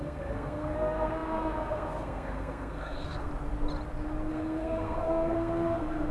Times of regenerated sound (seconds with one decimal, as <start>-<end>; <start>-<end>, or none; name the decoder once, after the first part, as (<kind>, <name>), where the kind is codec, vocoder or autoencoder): 0.0-3.3 (codec, SNAC); 4.3-6.1